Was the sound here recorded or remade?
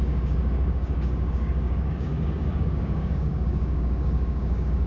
remade